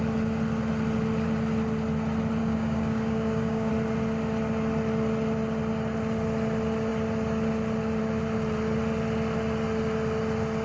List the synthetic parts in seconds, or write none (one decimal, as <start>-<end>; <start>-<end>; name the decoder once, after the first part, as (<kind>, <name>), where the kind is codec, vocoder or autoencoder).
2.4-3.7 (codec, DAC)

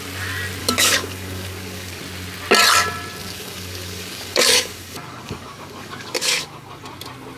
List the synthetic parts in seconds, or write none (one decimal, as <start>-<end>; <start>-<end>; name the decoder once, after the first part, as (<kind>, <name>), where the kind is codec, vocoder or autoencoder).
0.6-2.0 (codec, DAC); 3.2-6.8

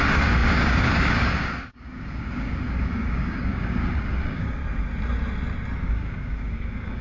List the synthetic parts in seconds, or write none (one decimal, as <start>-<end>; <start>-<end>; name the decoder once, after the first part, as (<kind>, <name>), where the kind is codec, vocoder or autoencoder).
0.0-4.6 (codec, DAC); 5.8-7.0

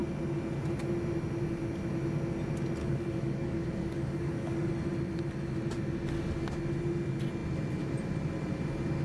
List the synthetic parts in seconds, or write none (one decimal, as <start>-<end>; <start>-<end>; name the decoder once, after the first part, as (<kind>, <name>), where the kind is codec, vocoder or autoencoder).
2.8-4.7 (codec, DAC)

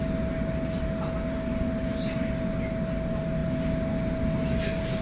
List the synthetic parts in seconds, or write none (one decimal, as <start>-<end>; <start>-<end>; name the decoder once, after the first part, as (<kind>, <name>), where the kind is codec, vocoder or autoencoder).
none

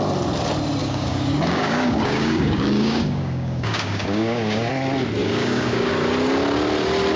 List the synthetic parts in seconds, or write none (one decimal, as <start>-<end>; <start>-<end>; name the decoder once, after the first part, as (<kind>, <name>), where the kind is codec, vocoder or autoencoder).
0.8-4.7 (codec, DAC); 5.2-5.9

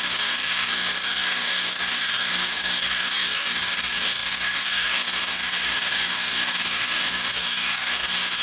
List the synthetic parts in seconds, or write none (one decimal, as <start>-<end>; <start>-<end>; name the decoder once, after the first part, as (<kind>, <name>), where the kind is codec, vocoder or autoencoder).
0.0-8.4 (codec, DAC)